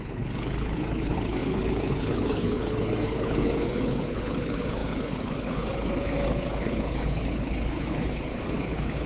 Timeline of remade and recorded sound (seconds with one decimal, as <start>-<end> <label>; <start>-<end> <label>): 0.0-9.1 remade